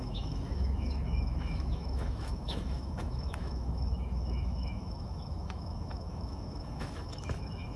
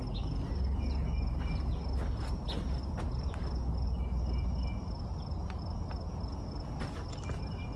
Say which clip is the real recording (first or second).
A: second